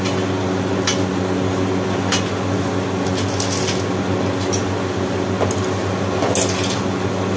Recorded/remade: recorded